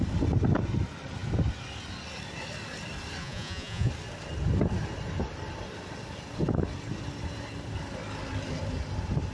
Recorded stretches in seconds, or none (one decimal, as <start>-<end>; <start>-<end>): 0.0-3.2; 3.9-9.3